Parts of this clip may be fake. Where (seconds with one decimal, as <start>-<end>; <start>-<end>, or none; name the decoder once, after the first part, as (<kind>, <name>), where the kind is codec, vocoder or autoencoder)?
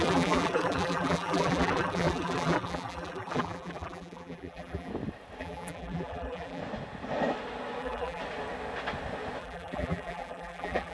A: 0.0-4.9 (vocoder, BigVGAN v2); 5.4-6.6; 7.8-8.2; 9.4-10.9